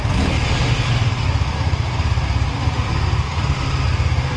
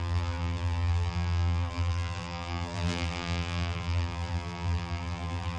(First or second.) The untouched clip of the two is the first